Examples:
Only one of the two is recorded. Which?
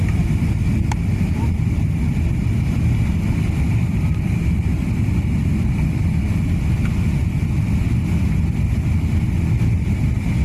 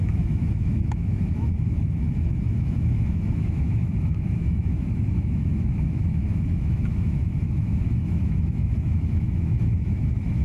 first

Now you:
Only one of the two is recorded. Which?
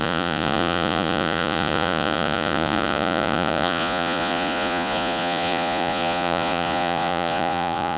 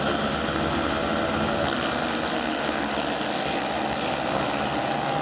second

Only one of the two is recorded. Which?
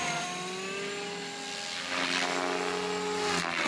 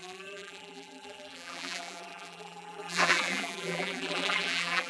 first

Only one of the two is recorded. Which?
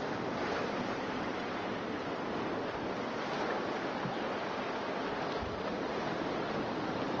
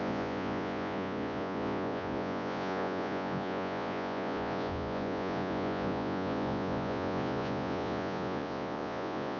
first